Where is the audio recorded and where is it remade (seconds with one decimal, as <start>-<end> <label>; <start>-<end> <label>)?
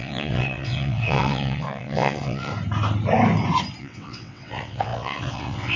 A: 0.0-2.5 remade; 2.5-3.8 recorded; 3.8-5.8 remade